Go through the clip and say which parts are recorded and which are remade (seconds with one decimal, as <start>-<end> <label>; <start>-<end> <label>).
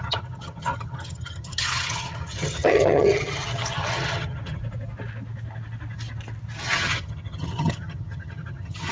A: 0.0-4.6 remade; 4.6-6.6 recorded; 6.6-8.9 remade